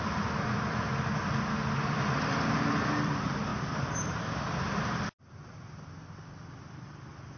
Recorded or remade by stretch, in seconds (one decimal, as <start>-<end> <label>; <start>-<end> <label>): 0.0-7.4 recorded